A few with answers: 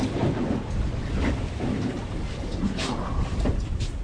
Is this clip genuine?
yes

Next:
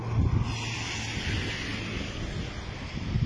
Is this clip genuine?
yes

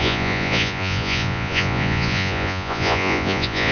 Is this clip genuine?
no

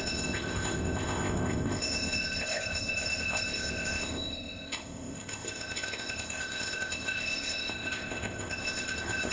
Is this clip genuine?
no